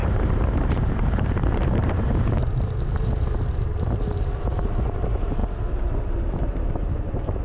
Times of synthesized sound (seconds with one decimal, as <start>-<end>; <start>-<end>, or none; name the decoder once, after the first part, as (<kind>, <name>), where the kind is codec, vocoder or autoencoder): 0.0-5.4 (vocoder, BigVGAN v2); 6.7-7.4